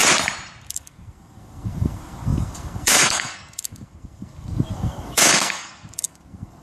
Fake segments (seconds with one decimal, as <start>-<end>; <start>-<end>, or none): 0.7-6.6